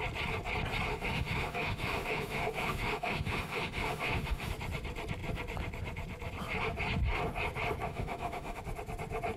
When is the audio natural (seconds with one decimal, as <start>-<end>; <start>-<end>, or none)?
0.0-0.9; 4.5-7.9; 8.6-9.4